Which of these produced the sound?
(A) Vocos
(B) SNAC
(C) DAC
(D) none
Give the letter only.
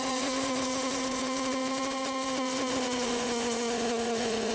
A